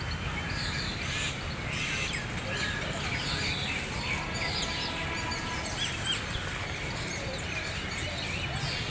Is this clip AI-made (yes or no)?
no